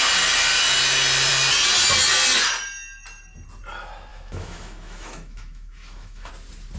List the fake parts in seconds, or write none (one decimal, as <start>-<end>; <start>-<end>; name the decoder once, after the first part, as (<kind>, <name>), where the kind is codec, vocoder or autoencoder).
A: 4.1-6.3 (autoencoder, DAC-VAE)